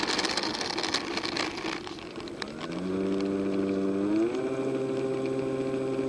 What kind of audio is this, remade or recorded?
recorded